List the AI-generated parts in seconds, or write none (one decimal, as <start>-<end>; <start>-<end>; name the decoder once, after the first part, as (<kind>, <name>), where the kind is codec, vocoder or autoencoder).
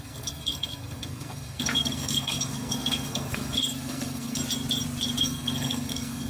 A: 0.0-4.4 (codec, SNAC); 5.2-6.3